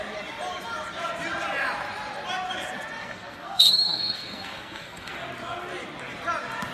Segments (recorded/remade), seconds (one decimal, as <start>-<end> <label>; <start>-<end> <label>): 0.0-3.0 recorded; 3.0-5.2 remade; 5.2-6.7 recorded